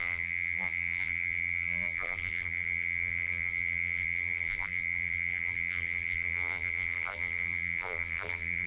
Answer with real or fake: fake